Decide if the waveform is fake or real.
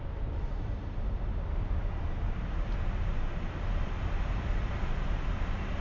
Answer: real